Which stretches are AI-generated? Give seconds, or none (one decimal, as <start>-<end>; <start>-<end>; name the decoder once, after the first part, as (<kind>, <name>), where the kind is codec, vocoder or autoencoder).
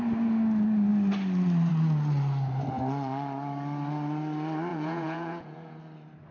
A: 4.7-5.8 (vocoder, Vocos)